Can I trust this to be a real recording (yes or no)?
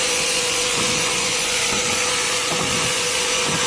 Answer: no